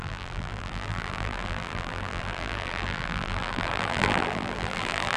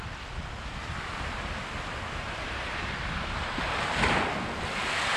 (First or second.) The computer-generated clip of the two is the first